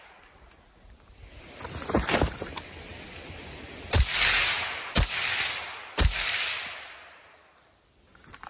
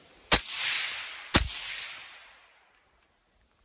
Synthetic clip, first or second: first